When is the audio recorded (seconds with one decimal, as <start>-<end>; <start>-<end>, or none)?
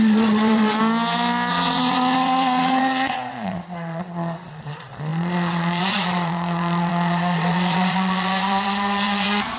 0.8-1.5